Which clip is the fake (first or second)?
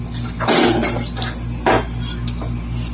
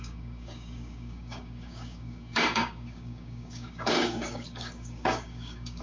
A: second